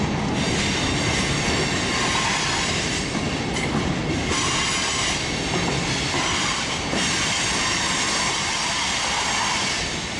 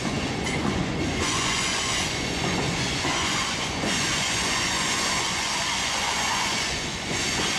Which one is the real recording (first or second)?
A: first